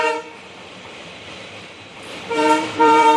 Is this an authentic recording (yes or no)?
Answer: no